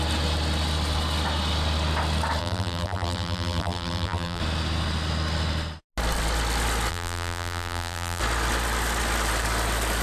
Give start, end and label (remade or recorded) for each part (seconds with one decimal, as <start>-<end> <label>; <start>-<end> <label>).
0.0-2.4 recorded; 2.4-4.4 remade; 4.4-6.9 recorded; 6.9-8.2 remade; 8.2-10.0 recorded